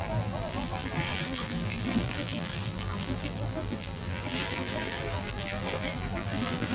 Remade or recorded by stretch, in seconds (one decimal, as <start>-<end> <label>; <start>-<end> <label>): 0.0-6.7 remade